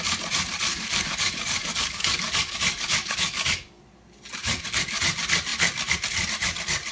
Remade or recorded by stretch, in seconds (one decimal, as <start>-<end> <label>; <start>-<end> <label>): 0.0-0.7 recorded; 0.7-3.8 remade; 3.8-4.4 recorded; 4.4-5.0 remade; 5.0-6.9 recorded